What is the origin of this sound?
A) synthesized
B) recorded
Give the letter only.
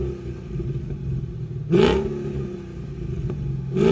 B